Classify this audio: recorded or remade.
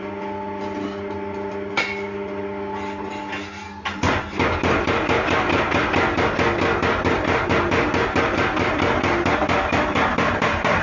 recorded